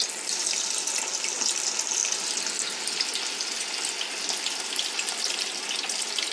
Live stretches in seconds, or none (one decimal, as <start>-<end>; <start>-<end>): 0.0-6.3